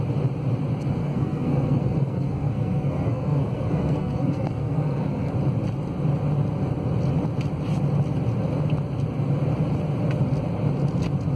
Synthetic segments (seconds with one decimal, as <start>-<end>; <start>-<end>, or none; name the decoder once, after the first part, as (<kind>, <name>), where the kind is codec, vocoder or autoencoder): 1.0-5.3 (codec, SNAC)